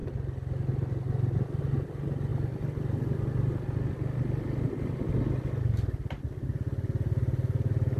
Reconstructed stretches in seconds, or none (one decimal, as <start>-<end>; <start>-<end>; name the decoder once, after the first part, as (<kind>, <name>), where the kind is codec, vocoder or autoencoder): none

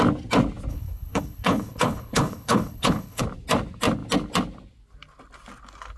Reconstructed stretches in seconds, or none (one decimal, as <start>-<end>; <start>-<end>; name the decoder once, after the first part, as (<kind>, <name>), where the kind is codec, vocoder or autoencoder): 0.7-3.2 (codec, HILCodec)

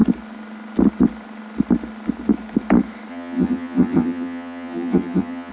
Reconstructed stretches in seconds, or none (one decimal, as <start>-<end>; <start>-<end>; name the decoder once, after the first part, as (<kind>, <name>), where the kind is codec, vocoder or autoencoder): 3.1-5.5 (vocoder, HiFi-GAN)

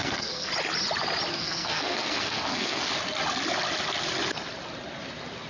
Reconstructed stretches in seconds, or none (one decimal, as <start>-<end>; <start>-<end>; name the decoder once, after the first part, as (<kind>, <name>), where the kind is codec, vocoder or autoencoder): 0.0-0.5 (codec, SNAC); 1.3-2.9

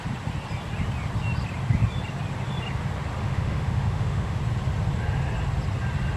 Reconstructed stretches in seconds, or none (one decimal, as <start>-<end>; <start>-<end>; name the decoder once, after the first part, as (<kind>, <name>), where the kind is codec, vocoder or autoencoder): 3.2-4.4 (autoencoder, DAC-VAE)